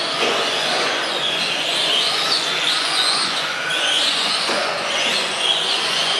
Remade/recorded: remade